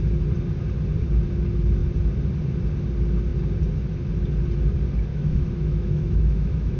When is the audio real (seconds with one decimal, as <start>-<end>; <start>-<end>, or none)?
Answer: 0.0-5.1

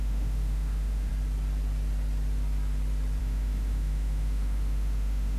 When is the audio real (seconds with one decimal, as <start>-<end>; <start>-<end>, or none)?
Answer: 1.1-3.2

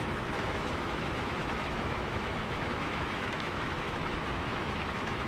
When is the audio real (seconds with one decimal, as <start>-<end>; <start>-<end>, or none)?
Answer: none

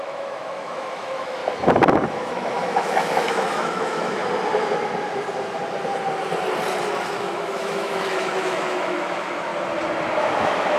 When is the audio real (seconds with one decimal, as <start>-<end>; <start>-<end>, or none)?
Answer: 1.4-2.1; 4.2-7.0; 9.5-10.2

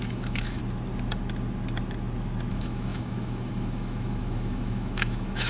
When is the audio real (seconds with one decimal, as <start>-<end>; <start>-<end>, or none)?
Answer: 0.6-2.5